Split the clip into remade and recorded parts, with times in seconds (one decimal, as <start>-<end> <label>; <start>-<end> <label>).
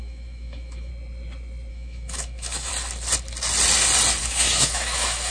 0.0-0.9 remade; 0.9-1.7 recorded; 1.7-2.7 remade; 2.7-4.2 recorded; 4.2-5.3 remade